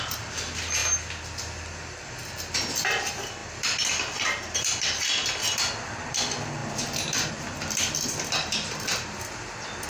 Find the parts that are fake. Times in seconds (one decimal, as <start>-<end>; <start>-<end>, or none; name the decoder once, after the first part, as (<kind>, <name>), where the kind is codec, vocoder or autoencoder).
0.0-0.8 (vocoder, BigVGAN v2); 1.4-2.2; 3.0-6.6; 7.3-9.9